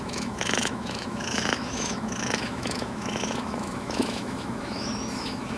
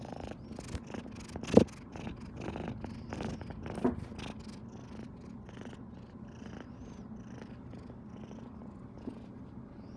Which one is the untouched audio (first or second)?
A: second